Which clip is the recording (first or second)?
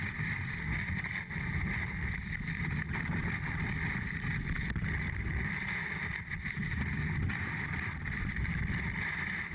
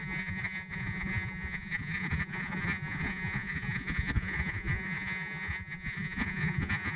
first